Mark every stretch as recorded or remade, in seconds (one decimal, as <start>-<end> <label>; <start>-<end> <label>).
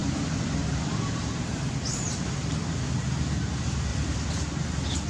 0.0-3.0 remade; 3.0-3.9 recorded; 3.9-4.5 remade; 4.5-5.1 recorded